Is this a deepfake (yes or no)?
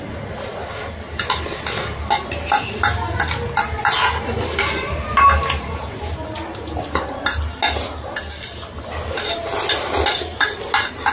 no